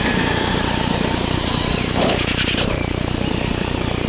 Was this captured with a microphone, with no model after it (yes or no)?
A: no